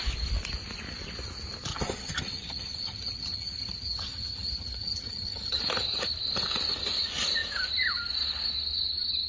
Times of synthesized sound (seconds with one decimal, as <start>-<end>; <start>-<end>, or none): 1.7-5.6

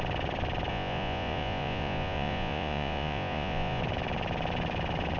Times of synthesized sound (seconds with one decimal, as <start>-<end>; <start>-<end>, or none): 0.7-3.8

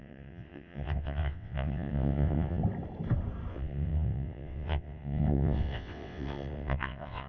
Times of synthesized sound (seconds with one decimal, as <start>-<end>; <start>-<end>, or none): 0.0-2.6; 3.5-7.3

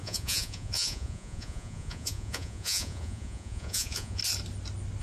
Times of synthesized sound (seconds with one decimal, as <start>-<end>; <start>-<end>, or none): 0.0-4.2

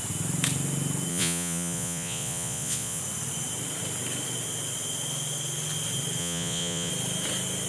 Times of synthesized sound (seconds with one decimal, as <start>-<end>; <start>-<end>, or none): 1.1-3.0; 6.2-6.9

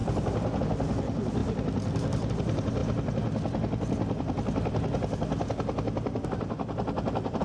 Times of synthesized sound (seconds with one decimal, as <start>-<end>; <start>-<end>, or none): none

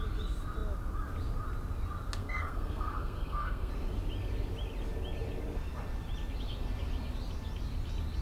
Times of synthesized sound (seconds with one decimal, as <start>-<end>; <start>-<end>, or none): 2.2-3.7

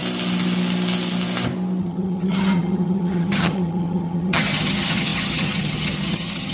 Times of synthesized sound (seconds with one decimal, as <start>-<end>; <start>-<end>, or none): 1.8-6.5